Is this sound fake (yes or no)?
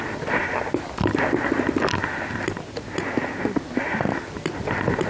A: no